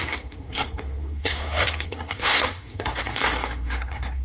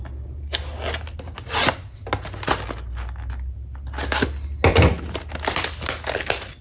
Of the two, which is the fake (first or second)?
first